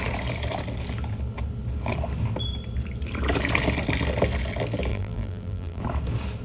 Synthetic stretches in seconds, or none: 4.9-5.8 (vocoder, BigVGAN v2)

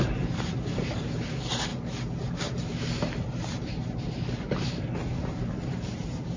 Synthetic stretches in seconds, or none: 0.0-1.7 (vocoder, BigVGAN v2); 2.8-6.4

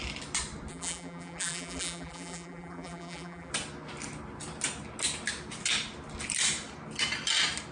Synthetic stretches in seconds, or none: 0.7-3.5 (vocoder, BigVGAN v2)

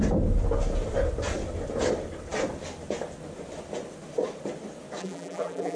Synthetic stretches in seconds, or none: 5.0-5.8 (vocoder, BigVGAN v2)